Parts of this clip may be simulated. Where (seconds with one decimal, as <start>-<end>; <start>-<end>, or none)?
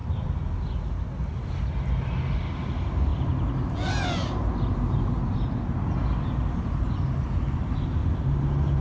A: none